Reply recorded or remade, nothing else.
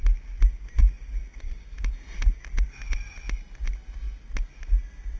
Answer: recorded